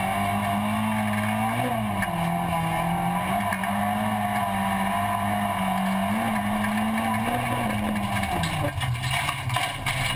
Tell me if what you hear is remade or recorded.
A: recorded